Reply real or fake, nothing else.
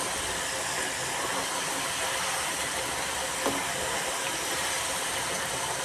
real